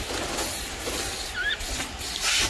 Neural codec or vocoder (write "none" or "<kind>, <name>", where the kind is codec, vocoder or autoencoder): none